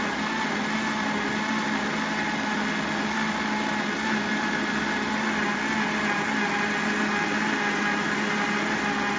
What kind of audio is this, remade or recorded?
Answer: recorded